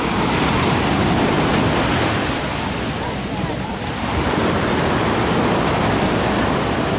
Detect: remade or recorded recorded